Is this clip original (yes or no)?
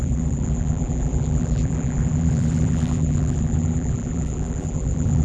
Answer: no